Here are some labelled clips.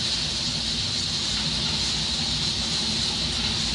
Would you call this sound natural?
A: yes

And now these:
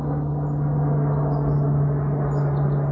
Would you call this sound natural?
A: yes